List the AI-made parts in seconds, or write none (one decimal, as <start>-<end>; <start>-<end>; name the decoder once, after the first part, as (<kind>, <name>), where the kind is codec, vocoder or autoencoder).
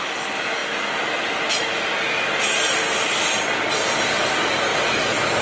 none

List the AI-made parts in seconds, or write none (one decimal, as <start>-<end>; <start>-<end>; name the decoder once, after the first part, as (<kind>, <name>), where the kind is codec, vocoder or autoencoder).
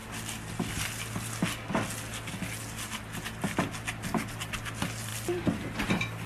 none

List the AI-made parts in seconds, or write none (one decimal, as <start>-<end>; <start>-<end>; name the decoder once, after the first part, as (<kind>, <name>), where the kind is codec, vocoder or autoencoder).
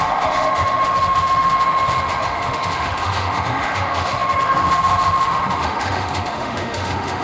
0.0-7.2 (autoencoder, DAC-VAE)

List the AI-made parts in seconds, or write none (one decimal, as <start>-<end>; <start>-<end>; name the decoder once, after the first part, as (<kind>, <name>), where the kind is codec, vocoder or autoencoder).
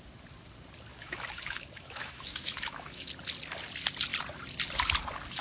0.9-3.1 (autoencoder, DAC-VAE)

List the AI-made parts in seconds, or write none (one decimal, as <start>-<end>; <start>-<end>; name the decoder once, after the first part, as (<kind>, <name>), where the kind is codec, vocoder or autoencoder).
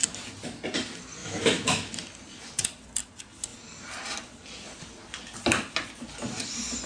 1.2-1.9 (autoencoder, DAC-VAE)